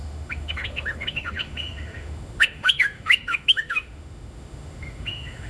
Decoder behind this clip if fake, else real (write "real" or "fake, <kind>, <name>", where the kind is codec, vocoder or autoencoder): fake, autoencoder, DAC-VAE